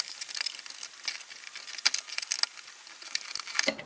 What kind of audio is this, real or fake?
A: real